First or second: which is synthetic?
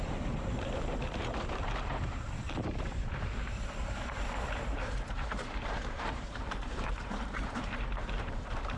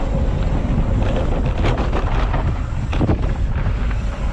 first